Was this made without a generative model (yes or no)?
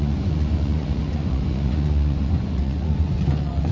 no